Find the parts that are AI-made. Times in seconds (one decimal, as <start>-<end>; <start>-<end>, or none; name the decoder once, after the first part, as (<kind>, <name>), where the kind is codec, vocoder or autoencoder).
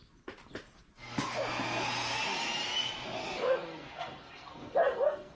3.2-5.4 (codec, SNAC)